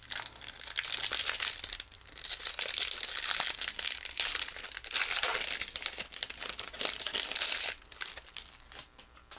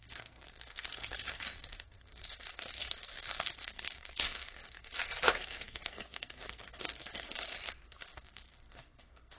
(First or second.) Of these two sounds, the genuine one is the first